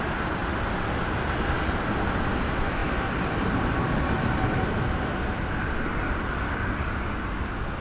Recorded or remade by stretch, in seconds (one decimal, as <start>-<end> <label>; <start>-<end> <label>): 0.0-7.8 recorded